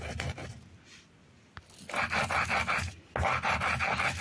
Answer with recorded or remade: recorded